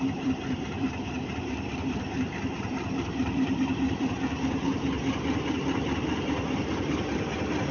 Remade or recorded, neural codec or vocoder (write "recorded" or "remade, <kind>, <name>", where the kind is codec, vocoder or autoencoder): remade, vocoder, BigVGAN v2